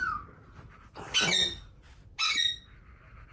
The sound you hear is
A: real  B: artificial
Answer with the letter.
A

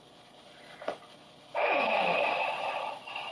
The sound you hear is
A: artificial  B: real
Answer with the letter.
A